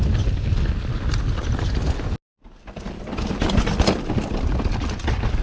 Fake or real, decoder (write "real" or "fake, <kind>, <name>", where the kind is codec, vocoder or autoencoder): real